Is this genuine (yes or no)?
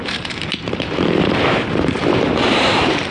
no